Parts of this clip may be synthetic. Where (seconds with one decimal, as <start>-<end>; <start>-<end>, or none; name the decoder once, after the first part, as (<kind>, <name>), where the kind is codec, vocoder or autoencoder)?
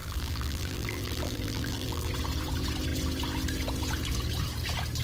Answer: 0.0-2.1 (vocoder, BigVGAN v2)